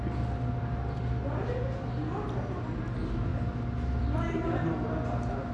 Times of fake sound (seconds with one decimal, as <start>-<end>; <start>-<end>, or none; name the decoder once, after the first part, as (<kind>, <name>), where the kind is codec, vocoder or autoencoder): none